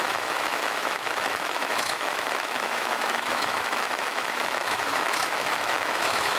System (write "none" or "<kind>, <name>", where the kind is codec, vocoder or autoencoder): autoencoder, DAC-VAE